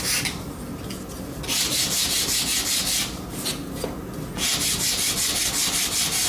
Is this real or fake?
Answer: real